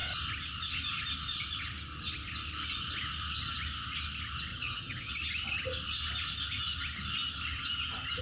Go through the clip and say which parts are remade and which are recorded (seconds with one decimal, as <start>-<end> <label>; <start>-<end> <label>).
0.0-4.5 recorded; 4.5-5.1 remade; 5.1-8.2 recorded